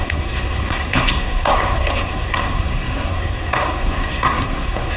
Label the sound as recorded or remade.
remade